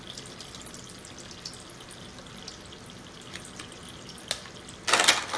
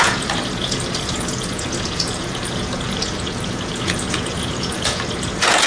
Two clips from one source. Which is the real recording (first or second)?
first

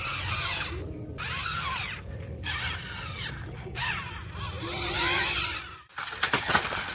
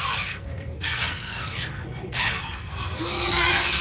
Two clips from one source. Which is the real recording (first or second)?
first